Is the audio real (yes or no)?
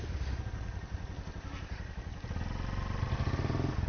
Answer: yes